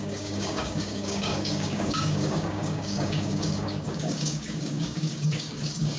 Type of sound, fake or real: fake